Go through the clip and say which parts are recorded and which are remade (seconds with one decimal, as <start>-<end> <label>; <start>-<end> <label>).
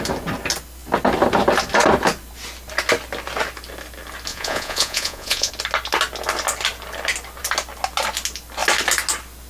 0.0-4.3 recorded; 4.3-5.5 remade; 5.5-9.5 recorded